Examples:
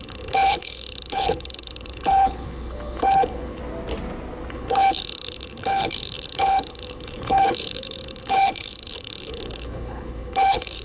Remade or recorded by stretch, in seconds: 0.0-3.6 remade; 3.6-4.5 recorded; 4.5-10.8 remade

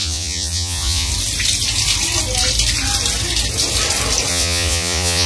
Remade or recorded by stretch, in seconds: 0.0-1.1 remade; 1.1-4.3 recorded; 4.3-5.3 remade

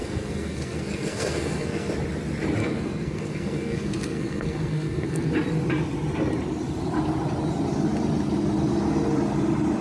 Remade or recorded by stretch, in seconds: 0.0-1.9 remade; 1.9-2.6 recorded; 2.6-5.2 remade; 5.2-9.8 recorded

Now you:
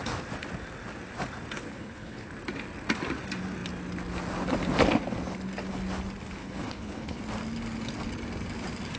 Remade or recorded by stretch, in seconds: 0.0-1.6 recorded; 1.6-2.3 remade; 2.3-6.4 recorded; 6.4-7.2 remade; 7.2-9.0 recorded

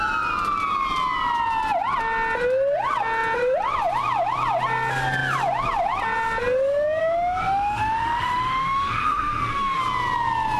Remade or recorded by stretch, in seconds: 0.0-7.0 recorded; 7.0-9.8 remade; 9.8-10.6 recorded

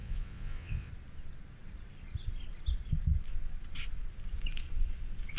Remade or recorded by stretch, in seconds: 0.0-0.9 remade; 0.9-5.4 recorded

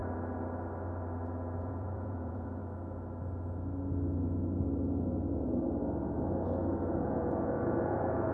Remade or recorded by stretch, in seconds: 0.0-1.6 recorded; 1.6-2.6 remade; 2.6-6.9 recorded; 6.9-8.3 remade